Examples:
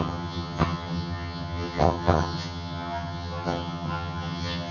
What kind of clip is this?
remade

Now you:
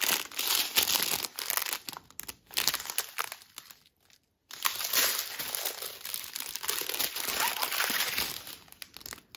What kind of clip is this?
recorded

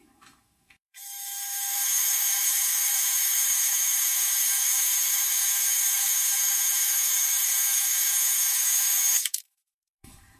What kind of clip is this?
remade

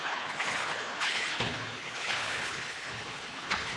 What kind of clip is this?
remade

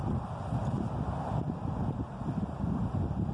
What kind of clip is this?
recorded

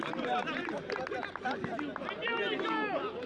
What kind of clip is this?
recorded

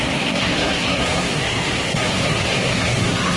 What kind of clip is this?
remade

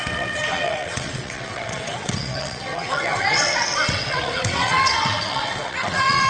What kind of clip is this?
remade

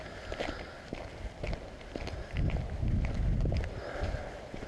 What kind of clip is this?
recorded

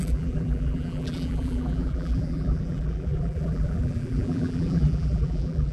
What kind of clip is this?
remade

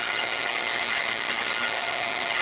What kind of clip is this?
remade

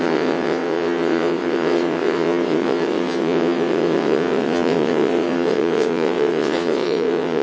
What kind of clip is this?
remade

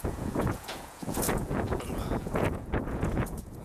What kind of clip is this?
remade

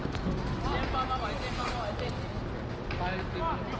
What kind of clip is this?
recorded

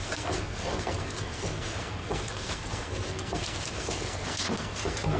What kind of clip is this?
remade